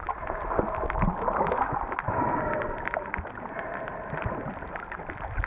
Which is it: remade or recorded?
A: recorded